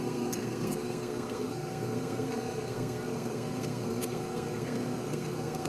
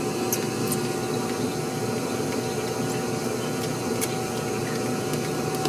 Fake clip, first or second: first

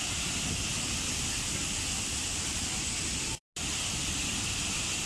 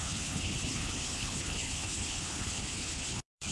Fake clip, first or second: second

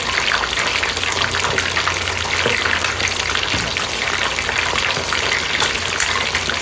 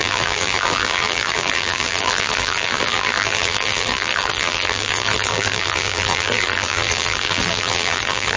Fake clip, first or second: second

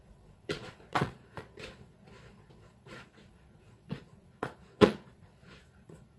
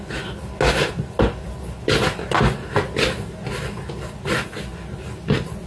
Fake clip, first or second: first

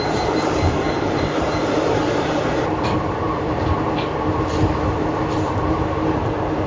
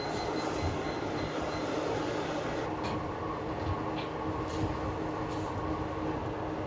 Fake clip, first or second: first